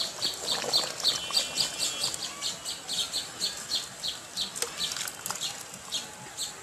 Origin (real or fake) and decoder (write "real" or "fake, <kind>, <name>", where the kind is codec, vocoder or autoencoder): real